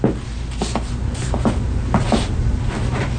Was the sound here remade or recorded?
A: recorded